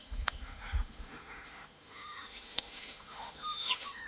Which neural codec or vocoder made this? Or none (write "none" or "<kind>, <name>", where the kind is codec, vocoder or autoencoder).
autoencoder, DAC-VAE